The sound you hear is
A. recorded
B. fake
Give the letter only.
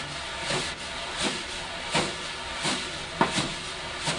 A